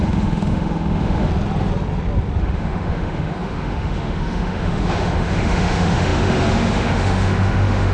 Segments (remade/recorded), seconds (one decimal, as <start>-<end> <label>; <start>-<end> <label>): 0.0-1.3 remade; 1.3-2.4 recorded; 2.4-7.9 remade